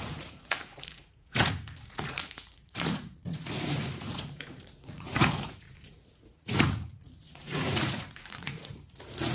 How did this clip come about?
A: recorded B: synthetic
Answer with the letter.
B